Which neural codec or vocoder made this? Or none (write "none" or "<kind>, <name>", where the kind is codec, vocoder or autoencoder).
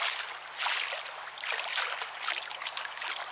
none